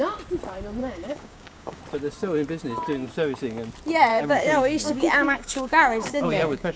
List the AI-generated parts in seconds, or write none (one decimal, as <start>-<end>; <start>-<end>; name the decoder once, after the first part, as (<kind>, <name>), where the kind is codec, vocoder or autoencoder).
0.8-1.8 (codec, DAC); 4.1-6.8